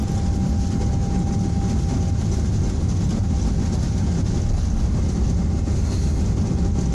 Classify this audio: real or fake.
real